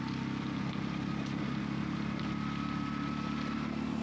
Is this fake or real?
real